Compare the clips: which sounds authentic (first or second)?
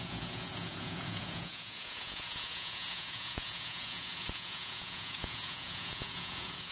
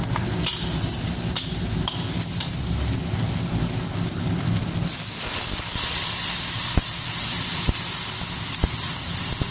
second